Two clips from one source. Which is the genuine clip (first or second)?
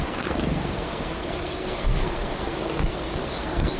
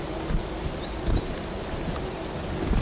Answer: second